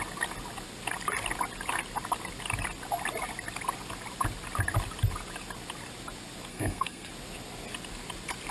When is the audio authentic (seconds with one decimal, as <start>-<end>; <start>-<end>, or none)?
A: 0.0-6.5; 7.1-8.5